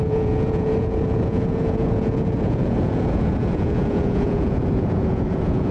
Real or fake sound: fake